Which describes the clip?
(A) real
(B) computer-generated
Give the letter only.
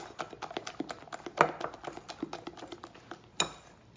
A